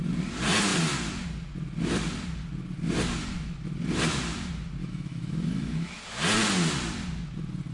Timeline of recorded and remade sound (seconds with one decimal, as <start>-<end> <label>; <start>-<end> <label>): 0.0-4.8 recorded; 4.8-6.0 remade; 6.0-7.7 recorded